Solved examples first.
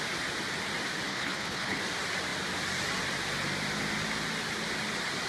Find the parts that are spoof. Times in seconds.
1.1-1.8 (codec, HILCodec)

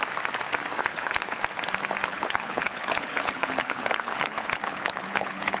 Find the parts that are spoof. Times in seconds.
0.8-1.4 (codec, HILCodec); 2.1-5.6

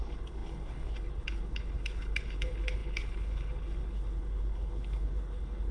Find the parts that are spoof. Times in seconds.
0.0-5.7 (codec, HILCodec)

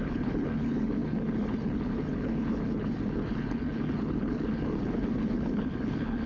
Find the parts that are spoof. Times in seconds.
0.0-6.3 (codec, HILCodec)

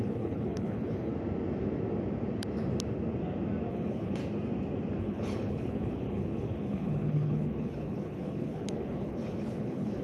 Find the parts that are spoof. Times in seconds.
0.0-1.1 (codec, HILCodec); 3.7-4.2; 5.0-10.0

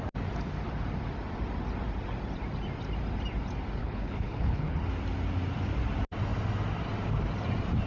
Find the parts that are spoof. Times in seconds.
3.8-4.8 (codec, HILCodec)